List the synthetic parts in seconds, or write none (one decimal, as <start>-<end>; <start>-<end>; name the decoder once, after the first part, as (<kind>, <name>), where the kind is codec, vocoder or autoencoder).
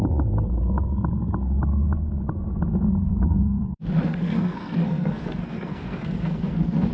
3.1-6.9 (codec, SNAC)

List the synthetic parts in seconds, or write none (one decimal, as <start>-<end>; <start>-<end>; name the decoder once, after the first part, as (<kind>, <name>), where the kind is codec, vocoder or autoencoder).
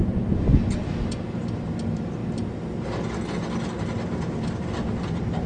none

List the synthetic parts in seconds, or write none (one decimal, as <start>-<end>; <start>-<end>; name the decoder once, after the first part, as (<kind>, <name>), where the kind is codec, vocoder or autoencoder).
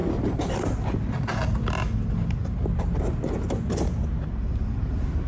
none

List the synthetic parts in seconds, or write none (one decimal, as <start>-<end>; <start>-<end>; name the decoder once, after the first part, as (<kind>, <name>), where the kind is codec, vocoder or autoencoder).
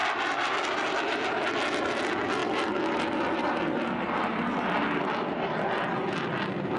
none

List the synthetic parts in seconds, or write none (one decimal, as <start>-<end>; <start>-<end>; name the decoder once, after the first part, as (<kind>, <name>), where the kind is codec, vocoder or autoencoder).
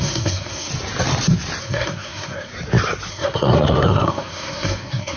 0.0-0.7 (codec, SNAC); 1.6-2.5; 3.1-5.2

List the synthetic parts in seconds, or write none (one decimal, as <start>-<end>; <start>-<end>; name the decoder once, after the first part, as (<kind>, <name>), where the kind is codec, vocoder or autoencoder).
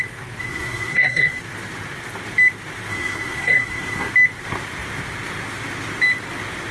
0.4-1.4 (codec, SNAC); 2.9-4.1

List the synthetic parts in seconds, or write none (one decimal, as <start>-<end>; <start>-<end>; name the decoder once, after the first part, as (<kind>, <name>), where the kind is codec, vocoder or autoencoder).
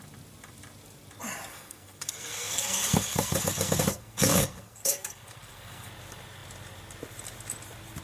1.5-5.9 (codec, SNAC)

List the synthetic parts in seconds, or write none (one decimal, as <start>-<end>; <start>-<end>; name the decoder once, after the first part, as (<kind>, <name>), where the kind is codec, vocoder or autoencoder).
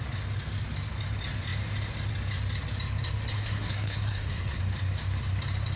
3.3-4.6 (codec, SNAC)